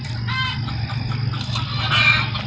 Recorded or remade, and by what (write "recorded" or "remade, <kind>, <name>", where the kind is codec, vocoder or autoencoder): recorded